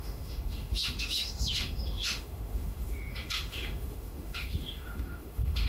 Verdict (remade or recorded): remade